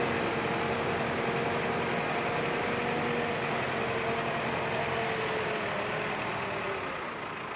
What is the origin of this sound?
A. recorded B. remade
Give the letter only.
A